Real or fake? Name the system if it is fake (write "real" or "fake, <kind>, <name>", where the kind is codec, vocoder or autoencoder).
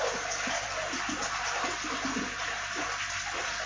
real